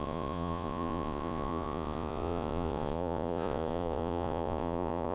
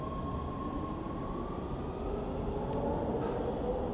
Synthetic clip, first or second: first